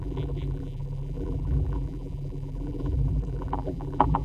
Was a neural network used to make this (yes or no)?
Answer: yes